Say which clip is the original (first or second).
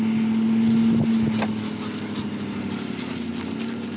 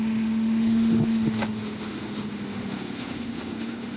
first